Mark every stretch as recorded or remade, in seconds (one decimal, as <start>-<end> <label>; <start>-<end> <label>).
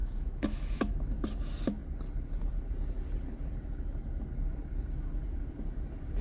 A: 0.0-0.9 remade; 0.9-6.2 recorded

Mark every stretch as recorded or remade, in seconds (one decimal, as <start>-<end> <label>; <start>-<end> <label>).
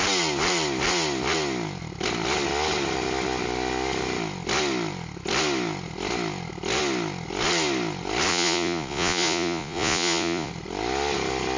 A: 0.0-8.3 recorded; 8.3-10.5 remade; 10.5-11.6 recorded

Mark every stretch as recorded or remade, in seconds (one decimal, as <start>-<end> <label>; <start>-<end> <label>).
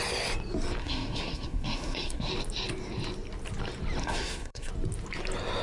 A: 0.0-0.8 recorded; 0.8-2.3 remade; 2.3-4.0 recorded; 4.0-4.7 remade; 4.7-5.6 recorded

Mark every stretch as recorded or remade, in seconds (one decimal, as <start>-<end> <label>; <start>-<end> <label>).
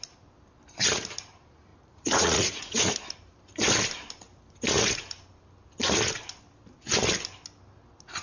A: 0.0-1.7 recorded; 1.7-2.9 remade; 2.9-8.2 recorded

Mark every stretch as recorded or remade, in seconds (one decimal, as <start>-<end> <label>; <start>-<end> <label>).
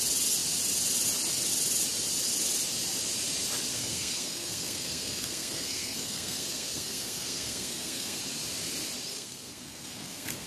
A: 0.0-3.7 recorded; 3.7-8.2 remade; 8.2-9.1 recorded; 9.1-10.5 remade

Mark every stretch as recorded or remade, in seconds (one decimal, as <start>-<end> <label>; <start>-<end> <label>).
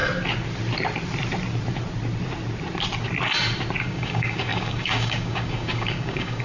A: 0.0-3.8 recorded; 3.8-6.4 remade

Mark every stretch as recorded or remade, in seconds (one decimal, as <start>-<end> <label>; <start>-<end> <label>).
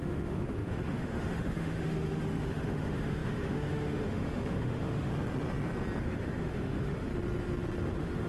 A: 0.0-5.1 remade; 5.1-6.0 recorded; 6.0-7.1 remade; 7.1-7.9 recorded; 7.9-8.3 remade